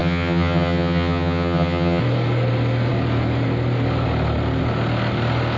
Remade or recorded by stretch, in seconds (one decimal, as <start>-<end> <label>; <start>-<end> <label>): 0.0-2.0 remade; 2.0-5.6 recorded